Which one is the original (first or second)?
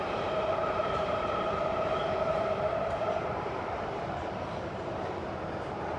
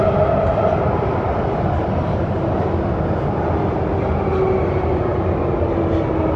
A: second